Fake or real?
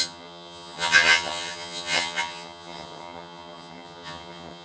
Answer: fake